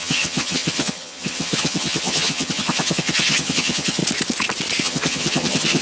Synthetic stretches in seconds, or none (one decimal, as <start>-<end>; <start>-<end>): 0.0-4.0; 4.8-5.8

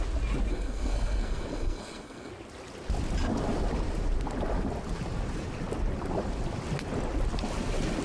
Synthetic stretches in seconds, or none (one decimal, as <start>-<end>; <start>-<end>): 0.5-2.3

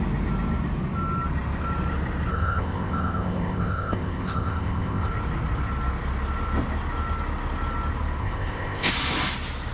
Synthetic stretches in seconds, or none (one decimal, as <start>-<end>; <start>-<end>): 2.3-5.1; 8.2-8.9

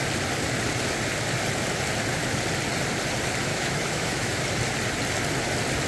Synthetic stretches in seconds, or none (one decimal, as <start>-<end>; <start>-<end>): 3.5-4.4

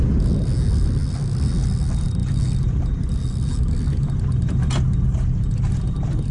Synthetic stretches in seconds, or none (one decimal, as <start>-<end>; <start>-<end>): none